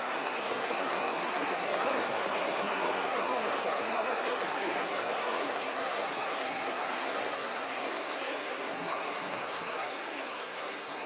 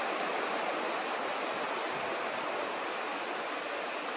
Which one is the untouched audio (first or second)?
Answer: second